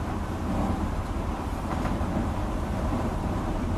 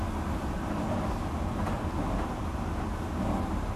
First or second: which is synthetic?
first